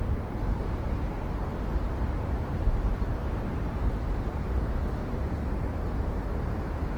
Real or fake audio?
fake